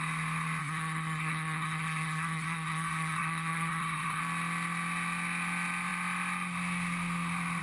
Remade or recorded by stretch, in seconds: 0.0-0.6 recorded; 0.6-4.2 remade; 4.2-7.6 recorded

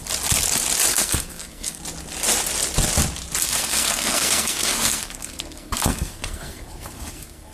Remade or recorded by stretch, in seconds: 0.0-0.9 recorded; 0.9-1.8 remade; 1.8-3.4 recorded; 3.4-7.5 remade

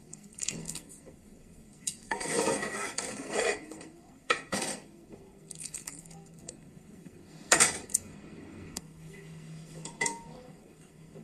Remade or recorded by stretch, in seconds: 0.0-11.2 remade

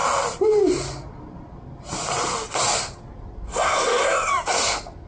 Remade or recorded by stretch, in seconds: 0.0-3.5 recorded; 3.5-4.3 remade; 4.3-5.1 recorded